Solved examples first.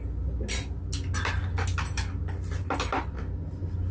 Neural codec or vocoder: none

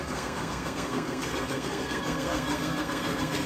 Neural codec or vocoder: codec, SNAC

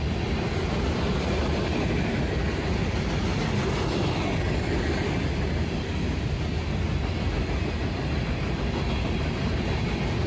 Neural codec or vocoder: none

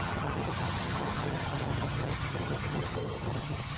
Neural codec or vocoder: vocoder, HiFi-GAN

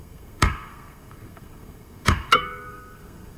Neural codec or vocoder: codec, SNAC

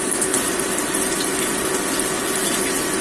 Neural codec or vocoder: none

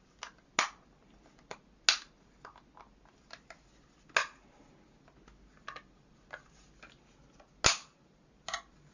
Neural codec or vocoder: none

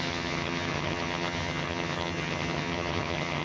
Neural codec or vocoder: vocoder, HiFi-GAN